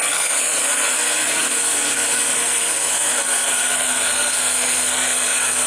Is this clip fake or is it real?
fake